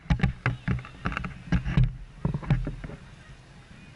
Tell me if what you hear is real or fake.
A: real